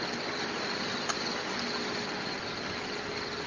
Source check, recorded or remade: recorded